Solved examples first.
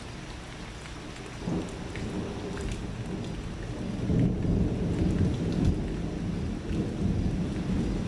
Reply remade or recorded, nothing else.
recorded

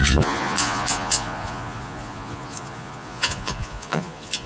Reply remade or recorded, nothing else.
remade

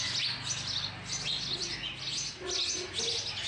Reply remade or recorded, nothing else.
recorded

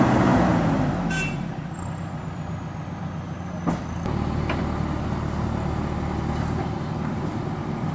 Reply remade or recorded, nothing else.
recorded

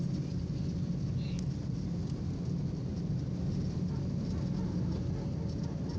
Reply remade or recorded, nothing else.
recorded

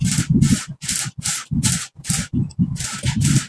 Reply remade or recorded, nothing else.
recorded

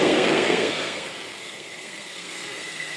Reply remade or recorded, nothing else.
remade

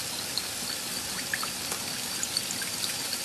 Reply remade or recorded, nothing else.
recorded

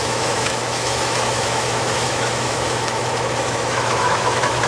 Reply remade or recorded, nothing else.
remade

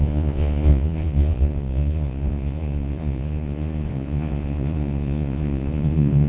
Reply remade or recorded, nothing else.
remade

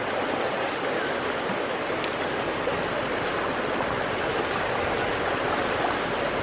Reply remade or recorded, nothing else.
recorded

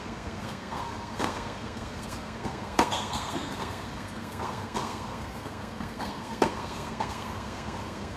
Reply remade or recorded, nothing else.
remade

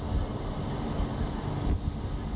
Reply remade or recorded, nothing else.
recorded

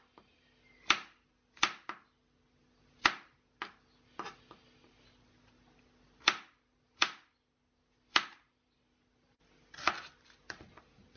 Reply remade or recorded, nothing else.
recorded